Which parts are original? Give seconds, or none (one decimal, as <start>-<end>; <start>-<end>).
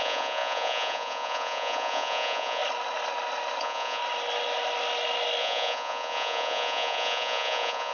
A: 2.6-3.6; 4.0-5.4